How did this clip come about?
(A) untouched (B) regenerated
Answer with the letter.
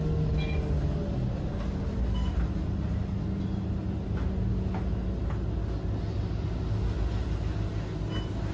A